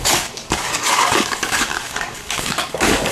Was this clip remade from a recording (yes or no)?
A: yes